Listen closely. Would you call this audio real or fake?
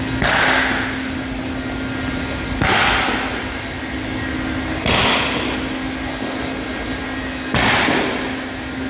real